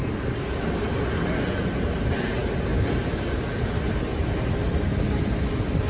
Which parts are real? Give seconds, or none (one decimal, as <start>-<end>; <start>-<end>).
0.0-5.9